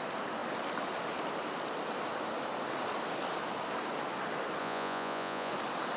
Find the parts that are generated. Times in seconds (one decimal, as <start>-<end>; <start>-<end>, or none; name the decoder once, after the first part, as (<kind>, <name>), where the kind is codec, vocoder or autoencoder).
4.6-5.5 (vocoder, Vocos)